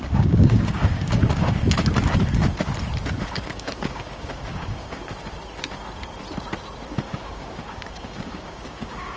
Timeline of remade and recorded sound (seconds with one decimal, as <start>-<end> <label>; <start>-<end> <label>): 0.0-1.6 remade; 1.6-3.2 recorded; 3.2-5.0 remade; 5.0-6.9 recorded; 6.9-9.2 remade